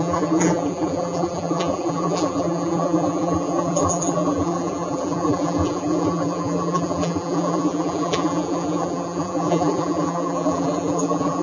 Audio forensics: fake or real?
fake